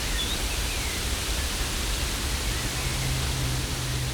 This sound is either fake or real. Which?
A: real